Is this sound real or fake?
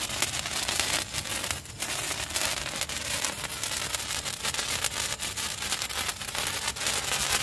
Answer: real